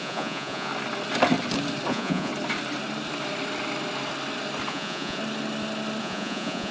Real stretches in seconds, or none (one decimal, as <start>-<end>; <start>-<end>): 0.7-1.9; 2.3-4.7; 5.2-6.0